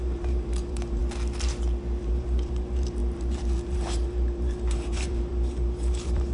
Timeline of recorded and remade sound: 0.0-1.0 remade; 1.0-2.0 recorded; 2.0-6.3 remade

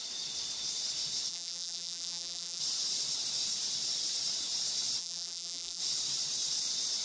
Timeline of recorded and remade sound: 0.0-1.3 recorded; 1.3-2.6 remade; 2.6-5.0 recorded; 5.0-5.8 remade; 5.8-7.0 recorded

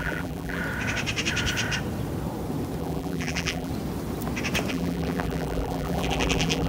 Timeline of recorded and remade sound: 0.0-0.6 remade; 0.6-2.8 recorded; 2.8-3.7 remade; 3.7-4.7 recorded; 4.7-6.7 remade

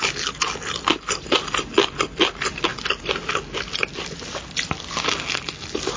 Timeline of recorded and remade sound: 0.0-6.0 recorded